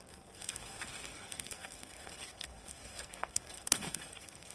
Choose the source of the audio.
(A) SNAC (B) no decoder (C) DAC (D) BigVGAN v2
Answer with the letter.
A